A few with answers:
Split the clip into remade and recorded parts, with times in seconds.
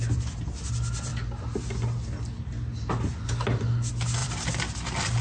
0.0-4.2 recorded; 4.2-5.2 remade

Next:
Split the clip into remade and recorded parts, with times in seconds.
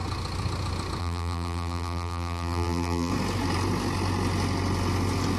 0.0-1.0 recorded; 1.0-3.1 remade; 3.1-5.4 recorded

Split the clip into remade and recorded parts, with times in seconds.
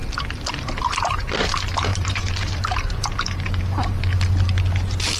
0.0-1.9 recorded; 1.9-4.0 remade; 4.0-5.2 recorded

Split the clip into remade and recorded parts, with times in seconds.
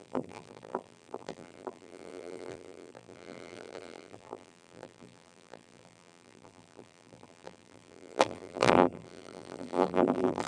0.0-10.5 remade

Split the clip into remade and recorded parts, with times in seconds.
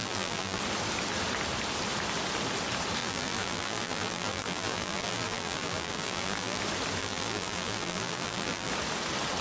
0.0-0.6 remade; 0.6-3.0 recorded; 3.0-6.6 remade; 6.6-7.0 recorded; 7.0-8.7 remade; 8.7-9.4 recorded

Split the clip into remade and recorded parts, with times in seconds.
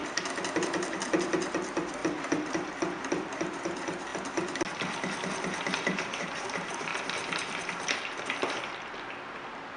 0.0-0.5 recorded; 0.5-2.0 remade; 2.0-2.5 recorded; 2.5-4.1 remade; 4.1-5.7 recorded; 5.7-9.8 remade